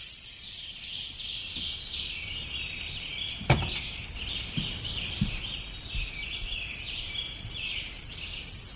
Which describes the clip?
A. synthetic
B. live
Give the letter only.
B